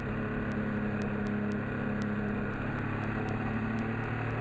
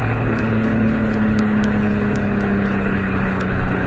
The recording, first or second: first